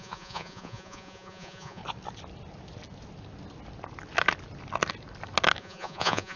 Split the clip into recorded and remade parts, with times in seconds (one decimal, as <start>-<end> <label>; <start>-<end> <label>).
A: 0.0-1.8 remade; 1.8-5.6 recorded; 5.6-6.4 remade